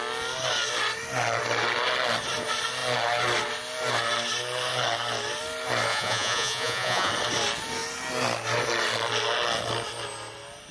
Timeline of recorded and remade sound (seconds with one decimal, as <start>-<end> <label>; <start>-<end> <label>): 0.0-5.9 recorded; 5.9-7.1 remade; 7.1-10.7 recorded